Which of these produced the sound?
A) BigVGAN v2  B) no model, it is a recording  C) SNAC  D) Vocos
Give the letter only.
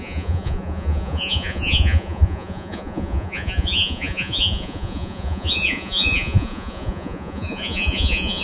D